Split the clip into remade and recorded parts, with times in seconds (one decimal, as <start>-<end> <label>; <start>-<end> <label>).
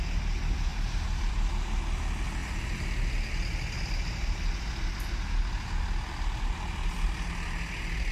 0.0-8.1 recorded